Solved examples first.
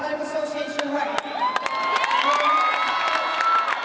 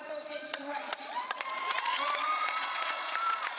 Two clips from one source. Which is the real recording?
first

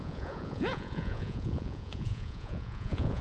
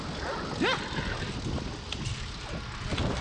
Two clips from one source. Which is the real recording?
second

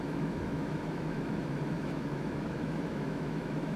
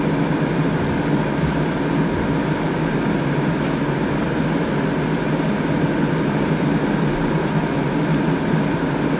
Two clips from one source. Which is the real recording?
second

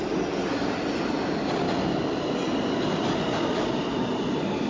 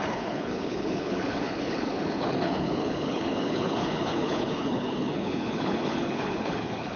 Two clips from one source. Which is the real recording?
first